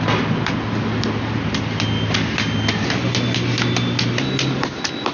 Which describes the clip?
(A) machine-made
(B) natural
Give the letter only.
B